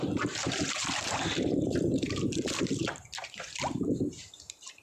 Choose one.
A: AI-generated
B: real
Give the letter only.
A